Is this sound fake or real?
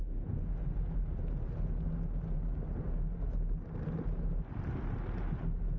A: real